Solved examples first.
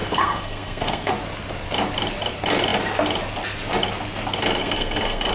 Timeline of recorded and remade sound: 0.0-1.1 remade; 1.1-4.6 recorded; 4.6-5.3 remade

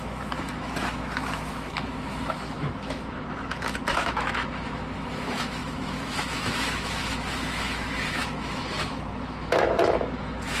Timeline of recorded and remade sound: 0.0-10.6 remade

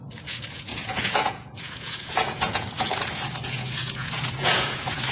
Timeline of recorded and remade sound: 0.0-5.1 remade

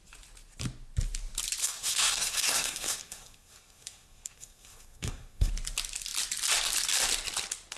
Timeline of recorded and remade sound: 0.0-1.6 recorded; 1.6-5.5 remade; 5.5-7.8 recorded

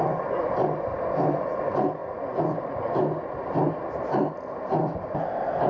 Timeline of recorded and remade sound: 0.0-5.7 recorded

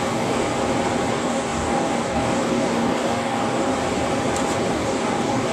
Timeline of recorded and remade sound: 0.0-0.5 remade; 0.5-1.1 recorded; 1.1-3.7 remade; 3.7-4.7 recorded; 4.7-5.5 remade

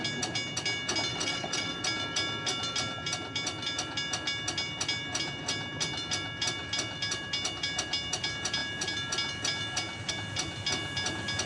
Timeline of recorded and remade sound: 0.0-1.1 recorded; 1.1-1.8 remade; 1.8-11.5 recorded